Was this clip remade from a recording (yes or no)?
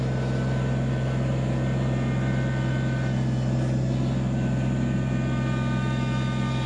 no